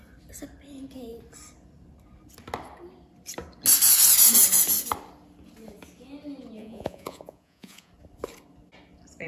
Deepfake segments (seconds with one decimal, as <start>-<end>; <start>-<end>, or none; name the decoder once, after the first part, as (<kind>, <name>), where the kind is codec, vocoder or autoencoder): 6.6-7.9 (vocoder, Vocos)

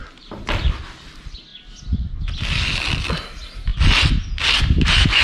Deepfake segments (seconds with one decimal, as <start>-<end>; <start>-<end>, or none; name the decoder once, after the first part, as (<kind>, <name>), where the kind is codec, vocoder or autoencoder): none

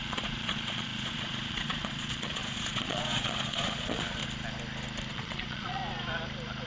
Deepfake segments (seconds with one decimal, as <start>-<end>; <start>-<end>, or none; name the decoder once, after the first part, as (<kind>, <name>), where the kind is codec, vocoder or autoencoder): 0.0-4.2 (vocoder, Vocos); 5.1-5.8

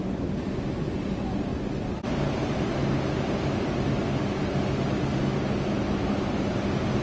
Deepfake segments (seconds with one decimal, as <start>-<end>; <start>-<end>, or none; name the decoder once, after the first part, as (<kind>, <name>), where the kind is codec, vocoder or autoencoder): none

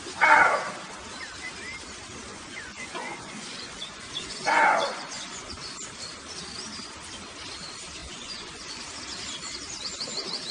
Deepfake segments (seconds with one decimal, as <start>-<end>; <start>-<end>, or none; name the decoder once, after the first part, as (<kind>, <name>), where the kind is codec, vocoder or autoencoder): 2.3-5.5 (vocoder, Vocos); 8.0-8.8